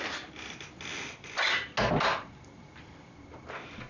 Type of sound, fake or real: real